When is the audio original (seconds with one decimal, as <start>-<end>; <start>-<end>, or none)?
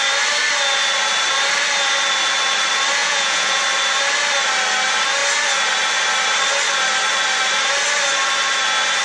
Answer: 0.0-3.0; 3.6-9.0